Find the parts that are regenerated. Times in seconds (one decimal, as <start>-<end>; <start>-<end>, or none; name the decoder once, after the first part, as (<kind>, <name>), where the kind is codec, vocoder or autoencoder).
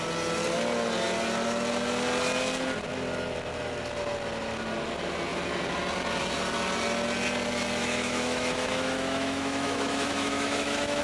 7.8-11.0 (autoencoder, DAC-VAE)